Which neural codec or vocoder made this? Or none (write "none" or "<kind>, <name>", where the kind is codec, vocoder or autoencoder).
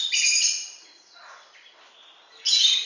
none